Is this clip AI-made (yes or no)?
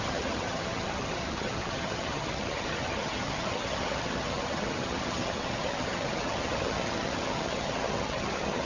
yes